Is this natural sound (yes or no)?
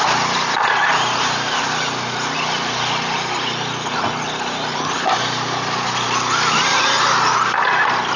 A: yes